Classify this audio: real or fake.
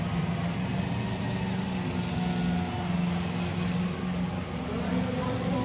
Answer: real